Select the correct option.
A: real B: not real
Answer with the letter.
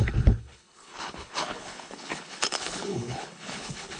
B